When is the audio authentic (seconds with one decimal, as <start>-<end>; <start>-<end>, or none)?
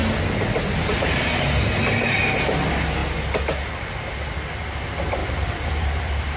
0.0-5.2